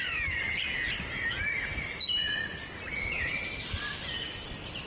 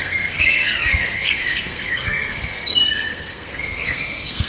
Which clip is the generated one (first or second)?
second